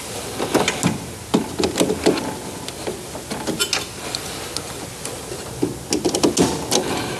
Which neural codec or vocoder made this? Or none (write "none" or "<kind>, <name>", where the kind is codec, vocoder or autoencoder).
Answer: none